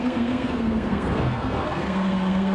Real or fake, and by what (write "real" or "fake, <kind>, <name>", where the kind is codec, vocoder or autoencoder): fake, codec, SNAC